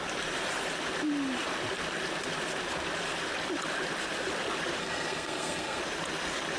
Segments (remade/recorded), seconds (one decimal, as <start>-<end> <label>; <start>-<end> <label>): 0.0-4.8 recorded; 4.8-5.8 remade; 5.8-6.6 recorded